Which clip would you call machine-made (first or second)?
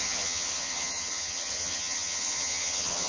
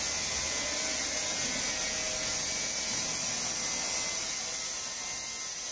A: first